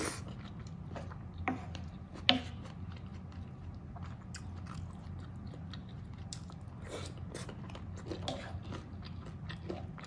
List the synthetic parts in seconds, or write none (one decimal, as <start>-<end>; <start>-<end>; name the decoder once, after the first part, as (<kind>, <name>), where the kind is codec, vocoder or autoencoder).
none